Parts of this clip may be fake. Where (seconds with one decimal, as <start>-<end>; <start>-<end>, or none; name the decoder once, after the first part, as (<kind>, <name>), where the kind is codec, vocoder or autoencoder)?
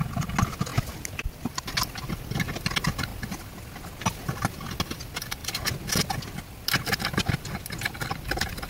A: none